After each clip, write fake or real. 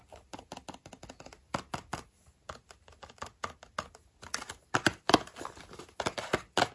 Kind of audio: real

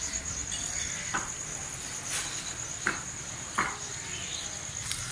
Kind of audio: real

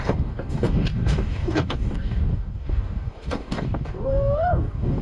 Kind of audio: fake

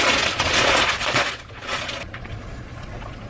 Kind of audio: fake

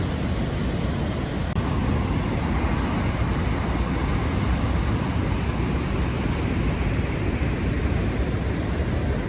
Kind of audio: real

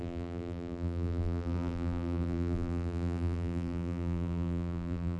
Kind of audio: fake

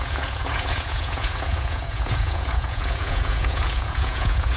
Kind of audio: fake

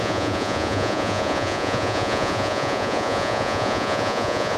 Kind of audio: fake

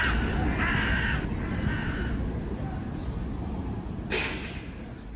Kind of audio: real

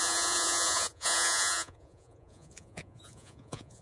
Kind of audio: fake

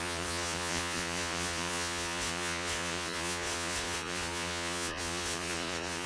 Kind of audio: fake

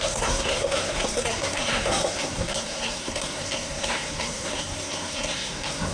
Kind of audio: fake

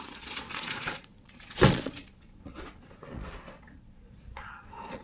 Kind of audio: fake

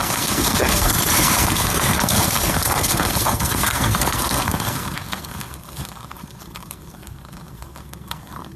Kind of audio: fake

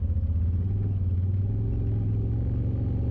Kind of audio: real